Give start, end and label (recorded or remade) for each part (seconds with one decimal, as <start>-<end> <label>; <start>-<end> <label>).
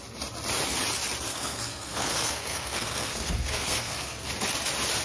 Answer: 0.0-1.3 recorded; 1.3-4.3 remade; 4.3-5.0 recorded